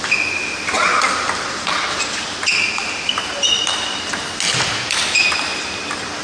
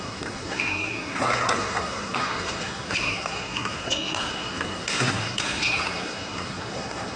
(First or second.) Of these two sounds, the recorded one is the first